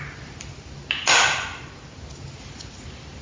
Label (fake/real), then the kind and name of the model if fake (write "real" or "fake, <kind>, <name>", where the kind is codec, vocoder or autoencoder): real